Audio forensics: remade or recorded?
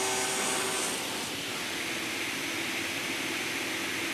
recorded